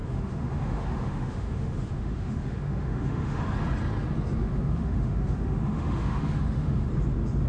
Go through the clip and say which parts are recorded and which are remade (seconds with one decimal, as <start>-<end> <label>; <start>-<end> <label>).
0.0-3.4 remade; 3.4-4.4 recorded; 4.4-6.9 remade; 6.9-7.5 recorded